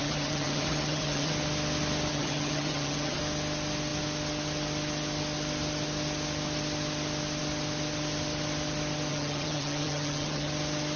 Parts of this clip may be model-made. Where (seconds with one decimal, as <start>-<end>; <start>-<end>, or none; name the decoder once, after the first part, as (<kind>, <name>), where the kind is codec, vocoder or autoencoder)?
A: 0.0-1.3 (vocoder, HiFi-GAN); 2.1-3.2; 9.1-10.5